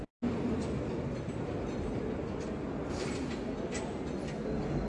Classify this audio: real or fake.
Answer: real